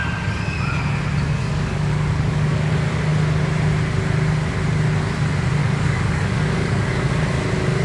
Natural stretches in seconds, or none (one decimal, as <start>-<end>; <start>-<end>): 0.0-1.4; 2.7-5.6; 7.1-7.8